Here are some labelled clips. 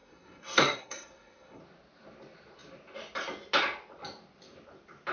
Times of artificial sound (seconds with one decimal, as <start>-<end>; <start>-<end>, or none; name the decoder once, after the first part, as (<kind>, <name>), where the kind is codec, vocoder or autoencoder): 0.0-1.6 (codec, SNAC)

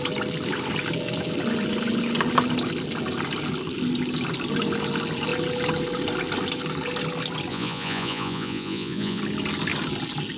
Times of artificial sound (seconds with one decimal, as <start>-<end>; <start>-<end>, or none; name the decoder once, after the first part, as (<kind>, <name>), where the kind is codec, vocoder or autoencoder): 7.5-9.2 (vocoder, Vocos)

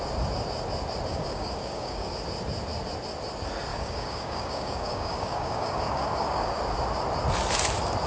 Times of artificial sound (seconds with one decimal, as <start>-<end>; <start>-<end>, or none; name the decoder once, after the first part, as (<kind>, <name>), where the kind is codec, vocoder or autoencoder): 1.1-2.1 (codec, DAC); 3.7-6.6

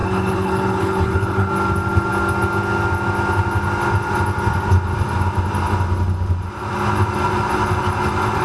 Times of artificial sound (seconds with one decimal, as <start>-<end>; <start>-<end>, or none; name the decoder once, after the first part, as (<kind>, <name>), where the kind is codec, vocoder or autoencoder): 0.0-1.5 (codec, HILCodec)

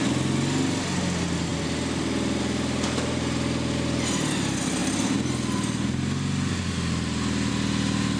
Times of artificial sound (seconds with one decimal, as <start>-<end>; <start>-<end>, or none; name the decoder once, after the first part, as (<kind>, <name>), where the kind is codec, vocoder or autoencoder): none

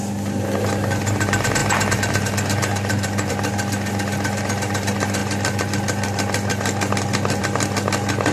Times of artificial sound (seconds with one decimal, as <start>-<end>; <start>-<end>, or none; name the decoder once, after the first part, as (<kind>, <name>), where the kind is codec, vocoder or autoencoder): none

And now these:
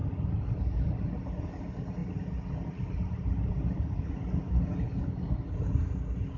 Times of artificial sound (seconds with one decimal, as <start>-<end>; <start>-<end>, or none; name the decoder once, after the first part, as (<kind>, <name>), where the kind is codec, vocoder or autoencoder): none

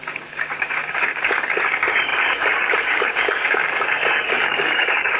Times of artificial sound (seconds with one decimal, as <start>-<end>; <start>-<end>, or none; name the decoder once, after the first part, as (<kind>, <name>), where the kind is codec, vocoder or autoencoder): 0.0-5.2 (codec, DAC)